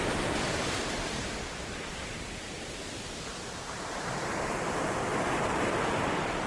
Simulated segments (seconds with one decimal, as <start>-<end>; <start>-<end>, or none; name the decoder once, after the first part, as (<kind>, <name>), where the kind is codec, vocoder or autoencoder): 0.0-6.5 (vocoder, BigVGAN v2)